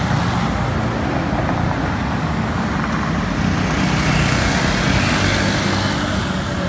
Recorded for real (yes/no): yes